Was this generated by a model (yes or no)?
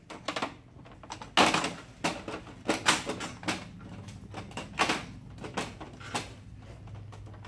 no